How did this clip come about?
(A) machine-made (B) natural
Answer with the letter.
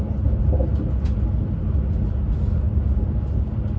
B